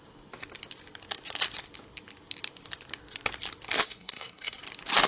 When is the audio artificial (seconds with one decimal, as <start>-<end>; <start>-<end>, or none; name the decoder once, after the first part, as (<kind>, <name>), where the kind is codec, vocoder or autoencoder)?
3.8-4.6 (codec, SNAC)